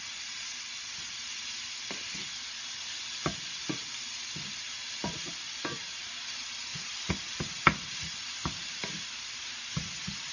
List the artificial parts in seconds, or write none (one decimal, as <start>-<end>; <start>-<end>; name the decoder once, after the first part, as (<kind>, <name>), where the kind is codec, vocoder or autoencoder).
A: none